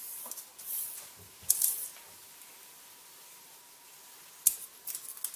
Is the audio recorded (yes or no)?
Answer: yes